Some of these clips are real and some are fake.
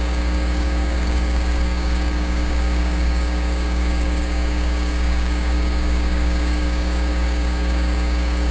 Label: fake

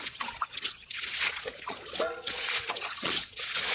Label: fake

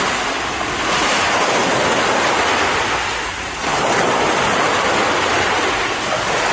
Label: real